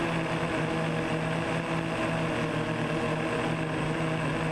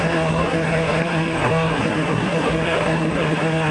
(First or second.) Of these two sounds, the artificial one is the second